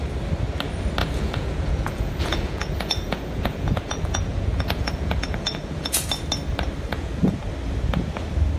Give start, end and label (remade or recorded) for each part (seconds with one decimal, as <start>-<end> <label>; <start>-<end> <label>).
0.0-1.0 recorded; 1.0-6.1 remade; 6.1-6.9 recorded; 6.9-7.4 remade; 7.4-8.6 recorded